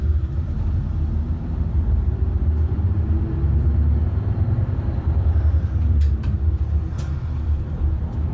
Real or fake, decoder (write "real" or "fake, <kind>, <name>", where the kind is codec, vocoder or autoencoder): fake, vocoder, BigVGAN v2